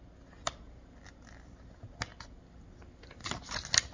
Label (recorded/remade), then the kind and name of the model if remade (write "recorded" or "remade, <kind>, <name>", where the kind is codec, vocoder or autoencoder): recorded